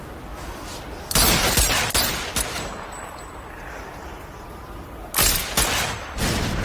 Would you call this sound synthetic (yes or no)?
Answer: no